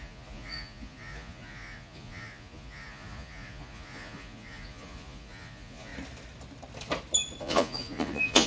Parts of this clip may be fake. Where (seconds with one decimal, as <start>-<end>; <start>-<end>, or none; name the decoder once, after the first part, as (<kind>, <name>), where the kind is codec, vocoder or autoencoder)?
0.0-5.9 (vocoder, Vocos); 7.4-8.5